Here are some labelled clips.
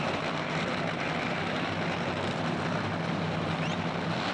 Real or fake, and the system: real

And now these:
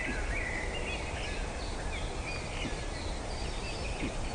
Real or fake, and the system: real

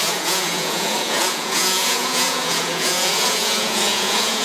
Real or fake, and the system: fake, vocoder, Vocos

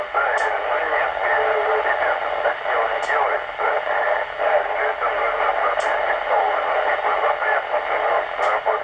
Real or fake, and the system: real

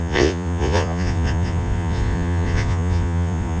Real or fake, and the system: fake, vocoder, Vocos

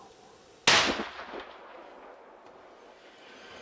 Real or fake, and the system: real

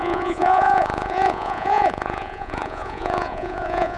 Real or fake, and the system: fake, vocoder, Vocos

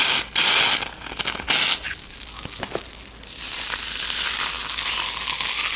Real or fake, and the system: real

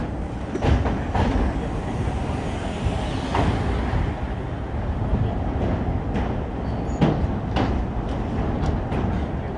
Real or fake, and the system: real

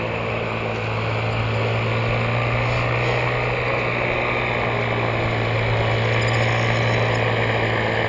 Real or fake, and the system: real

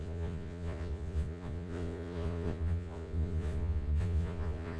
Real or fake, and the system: fake, vocoder, Vocos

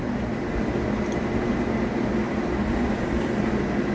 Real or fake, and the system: real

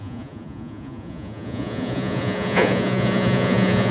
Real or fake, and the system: fake, vocoder, Vocos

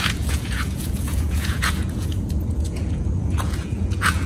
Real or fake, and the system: fake, vocoder, Vocos